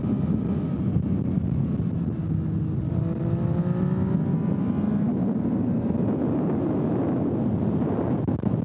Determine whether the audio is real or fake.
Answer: real